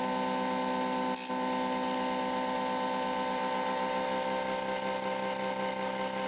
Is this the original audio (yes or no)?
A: yes